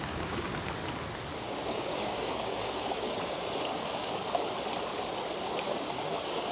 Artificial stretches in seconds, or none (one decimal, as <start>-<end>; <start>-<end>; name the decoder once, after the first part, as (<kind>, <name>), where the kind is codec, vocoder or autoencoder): 0.0-0.8 (codec, DAC); 1.4-4.2; 5.6-6.5